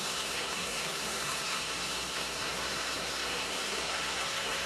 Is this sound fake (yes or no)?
yes